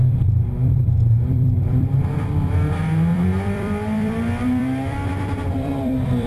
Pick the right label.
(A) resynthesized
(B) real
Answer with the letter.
A